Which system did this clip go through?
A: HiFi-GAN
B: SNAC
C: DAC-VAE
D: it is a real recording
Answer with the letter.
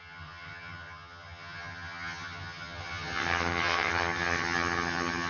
A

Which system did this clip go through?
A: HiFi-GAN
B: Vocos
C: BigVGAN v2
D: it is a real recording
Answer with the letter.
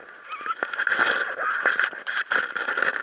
D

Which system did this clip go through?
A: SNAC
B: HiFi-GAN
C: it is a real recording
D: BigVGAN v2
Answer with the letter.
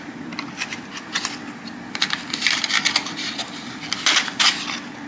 C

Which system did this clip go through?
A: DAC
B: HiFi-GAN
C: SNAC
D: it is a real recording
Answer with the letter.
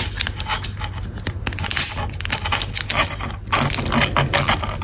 D